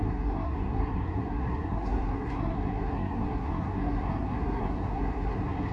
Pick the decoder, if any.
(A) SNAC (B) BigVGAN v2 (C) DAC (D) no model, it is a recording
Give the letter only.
A